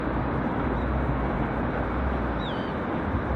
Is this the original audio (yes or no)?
yes